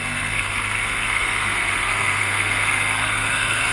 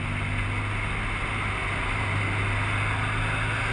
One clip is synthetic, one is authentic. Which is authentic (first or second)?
second